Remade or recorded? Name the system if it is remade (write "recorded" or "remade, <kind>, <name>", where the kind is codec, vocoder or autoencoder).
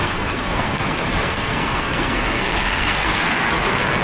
remade, codec, SNAC